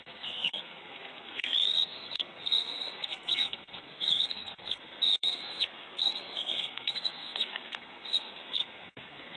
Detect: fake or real fake